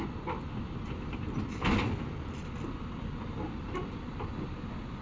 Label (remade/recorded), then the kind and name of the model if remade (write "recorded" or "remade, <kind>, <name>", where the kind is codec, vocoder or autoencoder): remade, vocoder, BigVGAN v2